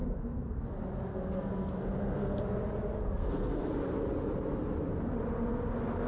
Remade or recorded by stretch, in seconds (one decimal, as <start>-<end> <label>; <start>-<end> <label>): 0.0-0.6 remade; 0.6-1.1 recorded; 1.1-2.4 remade; 2.4-3.0 recorded; 3.0-3.7 remade; 3.7-6.1 recorded